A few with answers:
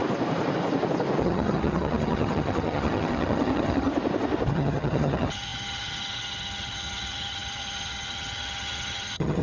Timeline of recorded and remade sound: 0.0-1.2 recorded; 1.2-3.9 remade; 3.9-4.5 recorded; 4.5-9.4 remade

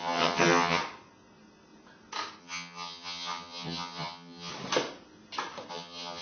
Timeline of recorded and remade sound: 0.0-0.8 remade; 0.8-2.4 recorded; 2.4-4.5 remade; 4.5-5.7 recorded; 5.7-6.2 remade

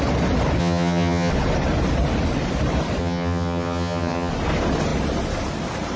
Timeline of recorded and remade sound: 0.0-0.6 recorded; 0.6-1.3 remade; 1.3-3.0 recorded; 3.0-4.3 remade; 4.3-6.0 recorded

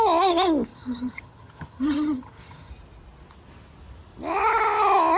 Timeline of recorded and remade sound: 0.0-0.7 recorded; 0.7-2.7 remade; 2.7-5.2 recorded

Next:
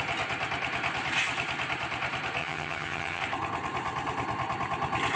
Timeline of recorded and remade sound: 0.0-2.4 recorded; 2.4-3.2 remade; 3.2-5.2 recorded

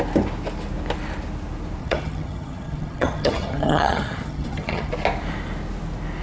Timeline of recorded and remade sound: 0.0-1.8 recorded; 1.8-4.9 remade; 4.9-6.2 recorded